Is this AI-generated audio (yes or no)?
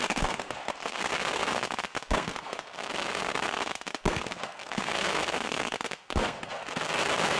yes